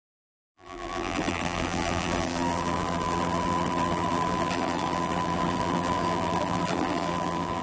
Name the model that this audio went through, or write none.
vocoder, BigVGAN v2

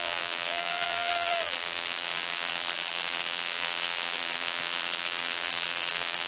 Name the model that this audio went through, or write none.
vocoder, BigVGAN v2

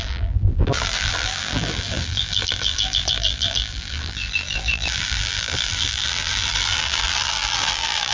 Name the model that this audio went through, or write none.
vocoder, BigVGAN v2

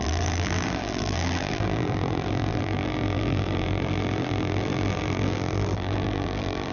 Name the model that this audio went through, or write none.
vocoder, BigVGAN v2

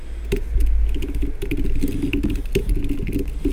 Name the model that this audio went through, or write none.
none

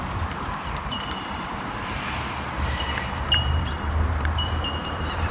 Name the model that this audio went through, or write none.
vocoder, BigVGAN v2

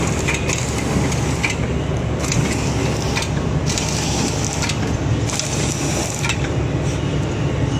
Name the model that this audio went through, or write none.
none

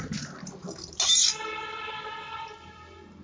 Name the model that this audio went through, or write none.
none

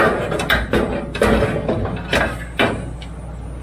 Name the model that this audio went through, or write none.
none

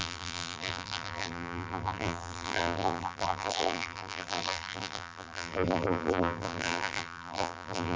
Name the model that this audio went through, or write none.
vocoder, BigVGAN v2